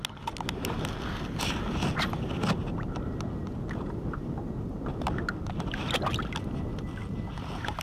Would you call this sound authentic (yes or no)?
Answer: yes